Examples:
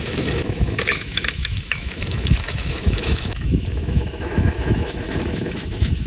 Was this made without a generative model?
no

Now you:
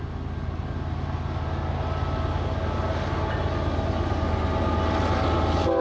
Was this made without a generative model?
yes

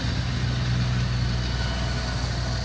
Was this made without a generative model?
yes